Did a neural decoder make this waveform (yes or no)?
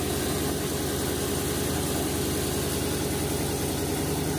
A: no